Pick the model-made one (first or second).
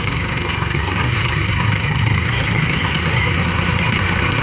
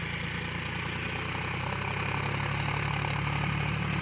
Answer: first